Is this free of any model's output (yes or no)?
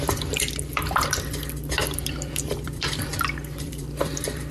no